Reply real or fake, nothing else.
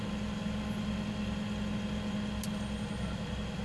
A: real